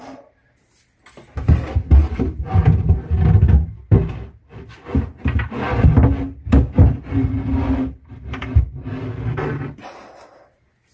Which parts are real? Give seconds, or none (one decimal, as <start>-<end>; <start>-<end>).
0.0-10.9

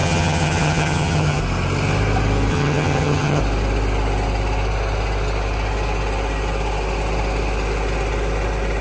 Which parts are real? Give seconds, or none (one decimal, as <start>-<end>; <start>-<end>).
1.4-2.5; 3.4-8.8

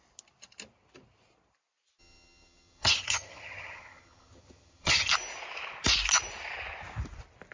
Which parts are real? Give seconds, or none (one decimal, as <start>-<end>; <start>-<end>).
0.0-2.0; 5.1-7.5

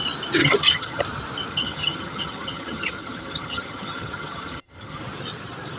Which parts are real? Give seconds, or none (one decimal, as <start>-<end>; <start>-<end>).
0.0-0.4; 1.0-1.5; 5.0-5.8

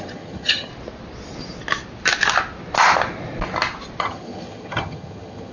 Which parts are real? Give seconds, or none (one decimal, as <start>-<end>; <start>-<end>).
0.7-4.0